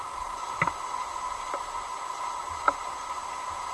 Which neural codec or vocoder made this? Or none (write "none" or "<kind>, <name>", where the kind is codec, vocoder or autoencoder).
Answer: none